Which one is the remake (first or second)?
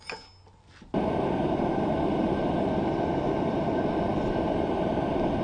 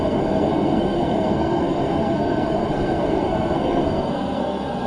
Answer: second